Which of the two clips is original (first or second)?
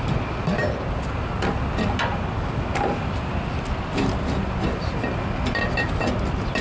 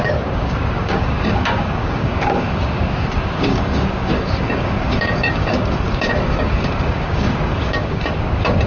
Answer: first